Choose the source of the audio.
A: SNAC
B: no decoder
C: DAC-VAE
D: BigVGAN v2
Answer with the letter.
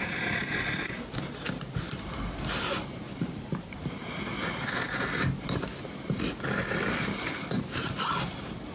D